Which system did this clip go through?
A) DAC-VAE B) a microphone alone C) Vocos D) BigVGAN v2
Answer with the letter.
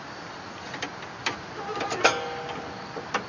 B